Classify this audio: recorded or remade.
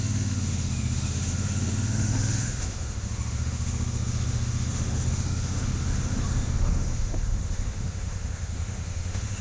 remade